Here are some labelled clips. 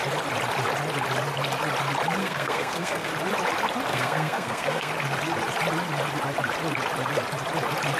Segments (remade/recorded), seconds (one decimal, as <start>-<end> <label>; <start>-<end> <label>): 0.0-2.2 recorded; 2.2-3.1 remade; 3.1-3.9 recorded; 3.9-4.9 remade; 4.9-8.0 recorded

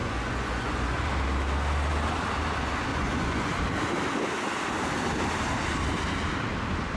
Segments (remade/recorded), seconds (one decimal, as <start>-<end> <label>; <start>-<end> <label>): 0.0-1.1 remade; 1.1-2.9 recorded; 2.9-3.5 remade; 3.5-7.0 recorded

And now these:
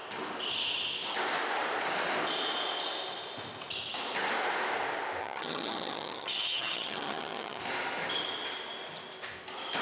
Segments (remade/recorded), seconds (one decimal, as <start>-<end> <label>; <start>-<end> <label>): 0.0-5.2 recorded; 5.2-7.6 remade; 7.6-9.8 recorded

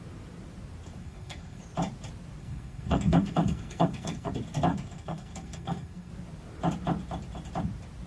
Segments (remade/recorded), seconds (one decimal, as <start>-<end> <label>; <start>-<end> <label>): 0.0-1.0 recorded; 1.0-1.6 remade; 1.6-2.4 recorded; 2.4-4.3 remade; 4.3-4.7 recorded; 4.7-6.1 remade; 6.1-8.1 recorded

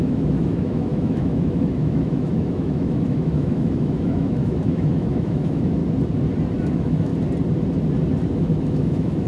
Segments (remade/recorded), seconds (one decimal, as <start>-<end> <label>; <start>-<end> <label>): 0.0-5.8 remade; 5.8-6.6 recorded; 6.6-7.1 remade; 7.1-8.3 recorded; 8.3-9.3 remade

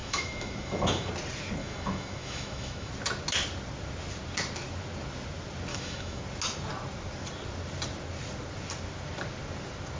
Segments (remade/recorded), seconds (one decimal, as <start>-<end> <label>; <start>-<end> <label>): 0.0-1.1 remade; 1.1-1.6 recorded; 1.6-2.9 remade; 2.9-5.7 recorded; 5.7-6.2 remade; 6.2-10.0 recorded

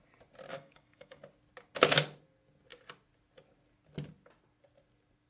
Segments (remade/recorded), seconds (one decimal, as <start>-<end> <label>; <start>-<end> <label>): 0.0-0.5 recorded; 0.5-1.2 remade; 1.2-5.3 recorded